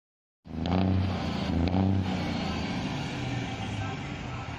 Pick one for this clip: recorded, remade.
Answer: recorded